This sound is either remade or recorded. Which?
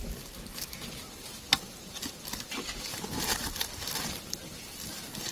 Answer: recorded